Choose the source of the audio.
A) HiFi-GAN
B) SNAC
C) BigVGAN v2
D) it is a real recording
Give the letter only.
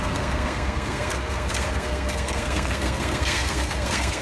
B